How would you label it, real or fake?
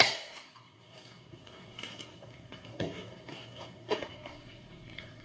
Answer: fake